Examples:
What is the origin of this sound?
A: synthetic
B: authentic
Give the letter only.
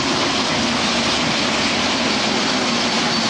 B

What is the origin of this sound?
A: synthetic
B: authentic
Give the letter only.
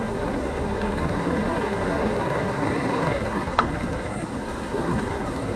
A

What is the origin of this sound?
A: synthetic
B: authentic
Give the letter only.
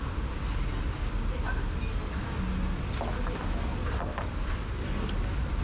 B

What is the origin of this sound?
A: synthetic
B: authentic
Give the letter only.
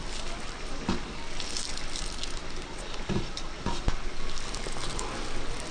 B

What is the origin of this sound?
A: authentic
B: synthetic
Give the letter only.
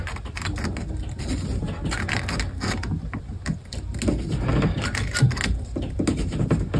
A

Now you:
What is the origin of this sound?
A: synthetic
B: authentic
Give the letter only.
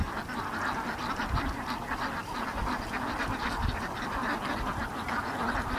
B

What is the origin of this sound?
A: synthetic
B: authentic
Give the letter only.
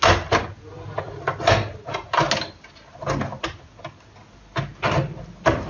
B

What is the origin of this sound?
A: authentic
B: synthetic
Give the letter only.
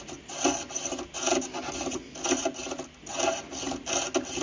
A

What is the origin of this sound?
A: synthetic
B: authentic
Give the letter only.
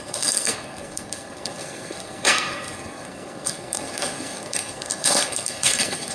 A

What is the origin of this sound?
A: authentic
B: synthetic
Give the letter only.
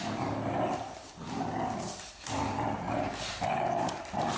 A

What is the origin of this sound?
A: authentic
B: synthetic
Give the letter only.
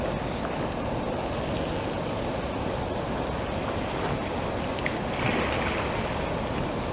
A